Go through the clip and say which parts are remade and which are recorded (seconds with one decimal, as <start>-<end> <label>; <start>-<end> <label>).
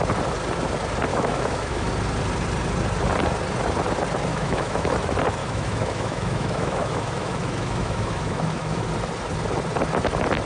0.0-1.1 recorded; 1.1-1.9 remade; 1.9-4.3 recorded; 4.3-4.9 remade; 4.9-5.4 recorded; 5.4-8.9 remade; 8.9-10.5 recorded